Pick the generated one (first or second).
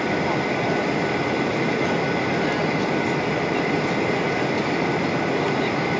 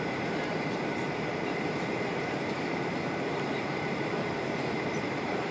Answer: second